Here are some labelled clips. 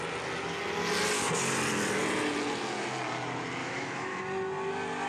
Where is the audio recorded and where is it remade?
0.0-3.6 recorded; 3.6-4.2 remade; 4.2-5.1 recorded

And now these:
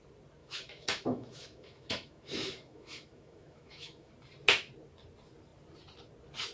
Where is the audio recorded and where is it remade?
0.0-0.4 recorded; 0.4-4.1 remade; 4.1-6.5 recorded

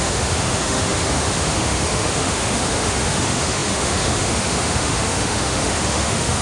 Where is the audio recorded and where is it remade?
0.0-6.4 remade